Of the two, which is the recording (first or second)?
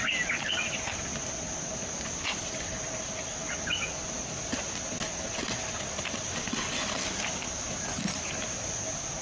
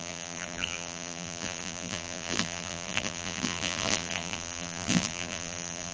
first